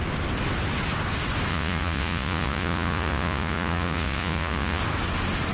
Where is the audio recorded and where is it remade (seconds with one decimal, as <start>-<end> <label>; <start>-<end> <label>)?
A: 0.0-1.5 recorded; 1.5-4.8 remade; 4.8-5.5 recorded